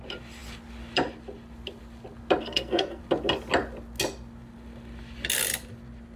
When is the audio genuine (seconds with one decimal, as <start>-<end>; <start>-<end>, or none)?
0.0-2.4; 3.0-6.2